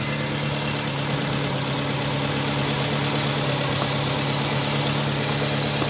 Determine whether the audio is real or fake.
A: real